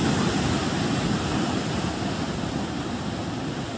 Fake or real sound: fake